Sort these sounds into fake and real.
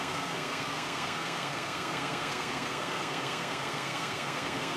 fake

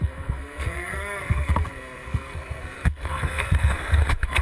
fake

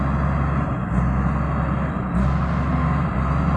real